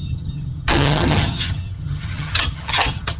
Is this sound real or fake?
fake